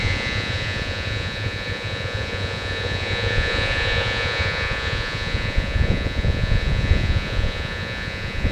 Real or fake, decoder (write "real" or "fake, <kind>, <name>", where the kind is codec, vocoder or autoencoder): fake, vocoder, Vocos